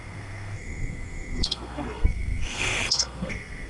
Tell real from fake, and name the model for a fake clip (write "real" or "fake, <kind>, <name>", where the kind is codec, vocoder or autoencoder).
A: fake, codec, SNAC